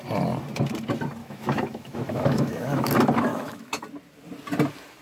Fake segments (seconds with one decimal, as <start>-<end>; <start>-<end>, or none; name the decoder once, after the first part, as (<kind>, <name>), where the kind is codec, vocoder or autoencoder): 1.2-2.9 (autoencoder, DAC-VAE); 3.3-3.8